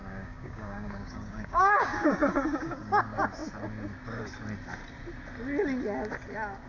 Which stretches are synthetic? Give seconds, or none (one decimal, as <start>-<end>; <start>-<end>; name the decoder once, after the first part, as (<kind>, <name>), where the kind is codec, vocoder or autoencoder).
0.0-3.0 (codec, DAC)